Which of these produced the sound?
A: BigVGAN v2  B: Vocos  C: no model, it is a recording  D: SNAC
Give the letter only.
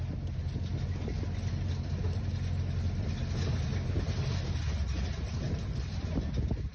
C